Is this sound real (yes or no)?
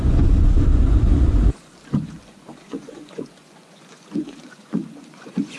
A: no